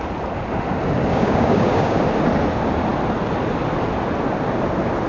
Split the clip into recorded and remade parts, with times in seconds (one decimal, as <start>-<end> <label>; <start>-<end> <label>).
0.0-1.1 recorded; 1.1-2.0 remade; 2.0-5.1 recorded